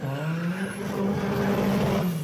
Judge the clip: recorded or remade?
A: recorded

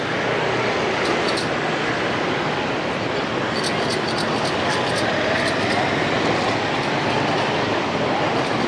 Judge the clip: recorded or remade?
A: recorded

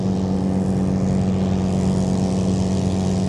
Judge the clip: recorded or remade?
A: recorded